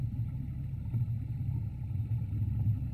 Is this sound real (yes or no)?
yes